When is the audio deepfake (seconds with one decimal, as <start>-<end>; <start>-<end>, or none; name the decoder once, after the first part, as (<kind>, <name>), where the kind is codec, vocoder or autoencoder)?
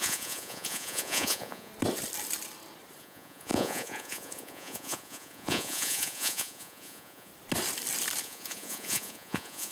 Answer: 0.0-1.7 (vocoder, Vocos); 3.0-7.3; 8.2-9.7